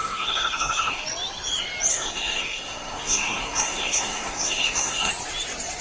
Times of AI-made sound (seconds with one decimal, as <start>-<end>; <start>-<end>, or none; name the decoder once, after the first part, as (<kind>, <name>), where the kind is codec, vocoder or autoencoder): 0.0-1.0 (codec, SNAC); 1.9-5.1